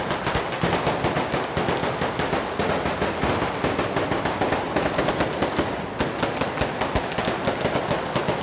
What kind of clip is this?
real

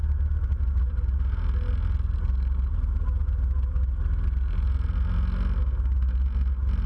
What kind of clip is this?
real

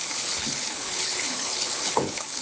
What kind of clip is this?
fake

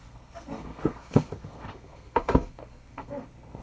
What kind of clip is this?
fake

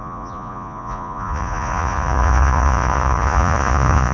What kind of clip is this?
fake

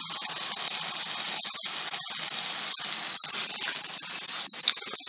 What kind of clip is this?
real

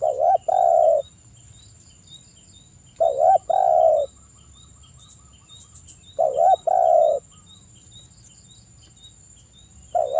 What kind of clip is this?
real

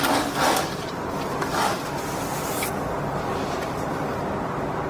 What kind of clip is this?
real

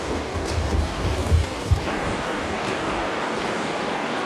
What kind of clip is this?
fake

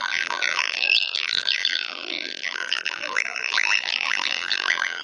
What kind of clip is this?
fake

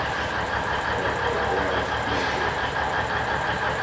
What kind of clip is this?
real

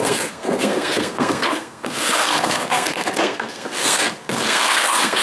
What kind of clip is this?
fake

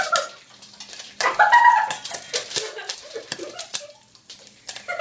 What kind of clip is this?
real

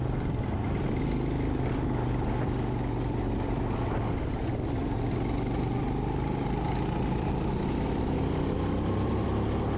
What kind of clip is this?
real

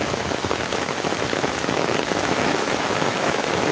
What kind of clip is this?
fake